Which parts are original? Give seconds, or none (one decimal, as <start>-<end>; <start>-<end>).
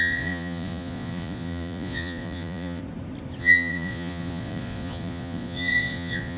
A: 2.8-3.4